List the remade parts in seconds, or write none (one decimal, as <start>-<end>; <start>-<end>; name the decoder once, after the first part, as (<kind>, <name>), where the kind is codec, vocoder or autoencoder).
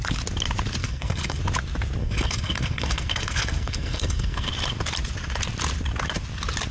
0.8-1.4 (codec, SNAC); 2.0-4.5